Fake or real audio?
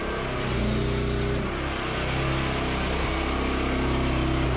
real